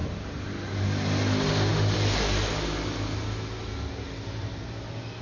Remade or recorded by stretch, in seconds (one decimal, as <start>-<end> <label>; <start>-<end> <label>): 0.0-5.2 recorded

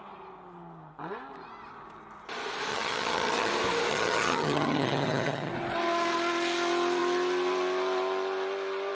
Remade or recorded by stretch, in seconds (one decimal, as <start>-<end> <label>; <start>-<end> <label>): 0.0-2.7 recorded; 2.7-3.5 remade; 3.5-3.9 recorded; 3.9-5.5 remade; 5.5-8.9 recorded

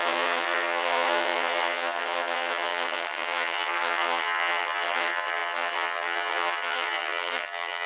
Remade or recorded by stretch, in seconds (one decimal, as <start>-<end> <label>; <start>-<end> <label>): 0.0-7.9 remade

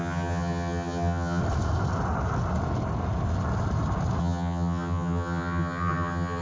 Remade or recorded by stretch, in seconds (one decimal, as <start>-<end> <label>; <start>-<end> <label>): 0.0-1.4 remade; 1.4-4.2 recorded; 4.2-6.4 remade

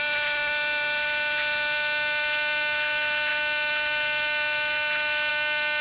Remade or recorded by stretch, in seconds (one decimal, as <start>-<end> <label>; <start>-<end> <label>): 0.0-5.8 recorded